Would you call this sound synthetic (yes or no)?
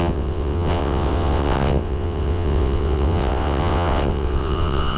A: yes